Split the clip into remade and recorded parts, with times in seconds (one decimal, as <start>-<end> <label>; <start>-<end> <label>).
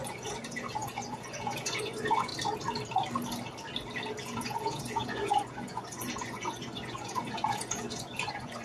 0.0-2.3 remade; 2.3-4.2 recorded; 4.2-8.6 remade